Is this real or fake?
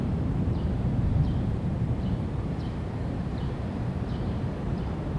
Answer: fake